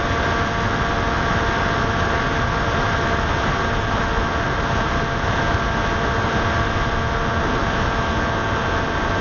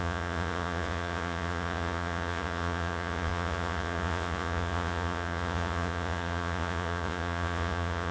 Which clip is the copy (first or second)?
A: second